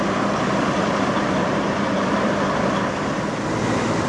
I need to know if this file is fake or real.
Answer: fake